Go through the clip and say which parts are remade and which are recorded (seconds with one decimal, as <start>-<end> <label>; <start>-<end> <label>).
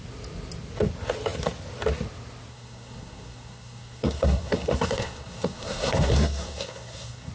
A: 0.0-2.5 recorded; 2.5-7.3 remade